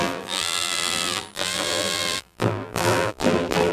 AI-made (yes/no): yes